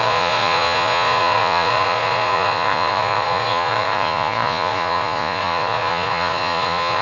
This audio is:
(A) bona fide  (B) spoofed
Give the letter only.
B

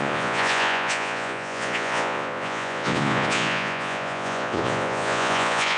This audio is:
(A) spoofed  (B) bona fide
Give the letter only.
A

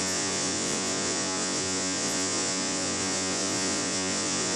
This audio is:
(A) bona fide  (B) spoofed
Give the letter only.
B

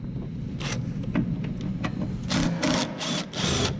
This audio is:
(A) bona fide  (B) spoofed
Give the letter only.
A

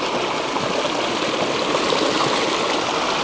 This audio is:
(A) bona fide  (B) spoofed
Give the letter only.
A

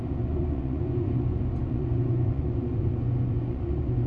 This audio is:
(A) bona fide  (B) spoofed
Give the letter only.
B